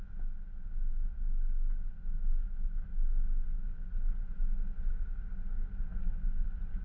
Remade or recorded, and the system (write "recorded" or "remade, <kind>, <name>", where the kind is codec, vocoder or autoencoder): recorded